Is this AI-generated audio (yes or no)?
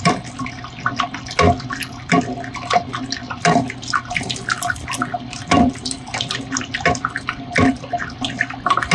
no